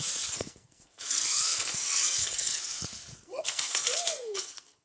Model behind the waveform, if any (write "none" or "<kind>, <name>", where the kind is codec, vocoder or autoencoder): codec, SNAC